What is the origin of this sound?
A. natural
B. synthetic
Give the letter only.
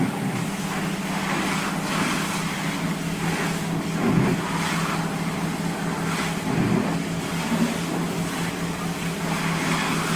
A